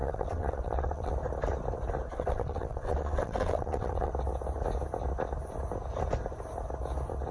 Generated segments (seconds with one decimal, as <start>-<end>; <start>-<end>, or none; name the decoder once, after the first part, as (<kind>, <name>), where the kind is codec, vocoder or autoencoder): 0.0-1.1 (vocoder, WaveNeXt); 2.1-4.1